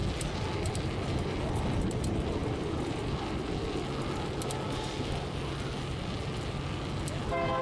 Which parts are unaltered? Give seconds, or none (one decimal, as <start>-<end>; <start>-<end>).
0.0-2.4; 3.8-7.6